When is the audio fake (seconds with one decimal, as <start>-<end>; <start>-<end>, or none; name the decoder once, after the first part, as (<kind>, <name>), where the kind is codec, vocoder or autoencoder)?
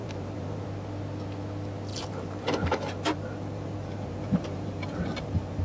0.0-0.6 (vocoder, BigVGAN v2); 1.9-5.6